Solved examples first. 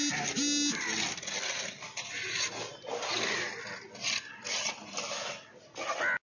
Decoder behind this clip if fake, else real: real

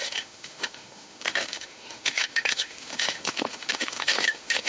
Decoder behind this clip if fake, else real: fake, autoencoder, DAC-VAE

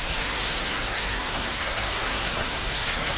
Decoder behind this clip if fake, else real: fake, codec, SNAC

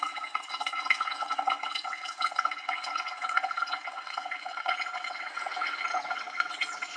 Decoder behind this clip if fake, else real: fake, vocoder, WaveNeXt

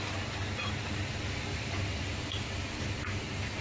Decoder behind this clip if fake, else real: real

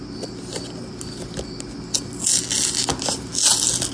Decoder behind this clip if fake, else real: real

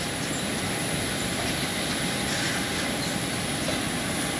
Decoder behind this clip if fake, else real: real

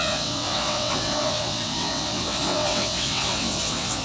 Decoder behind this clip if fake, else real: fake, vocoder, WaveNeXt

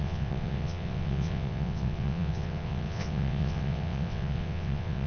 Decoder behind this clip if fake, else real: fake, vocoder, WaveNeXt